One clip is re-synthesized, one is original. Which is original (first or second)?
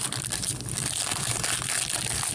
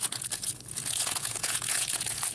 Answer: first